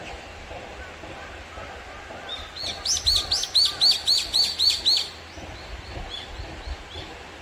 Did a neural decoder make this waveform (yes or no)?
no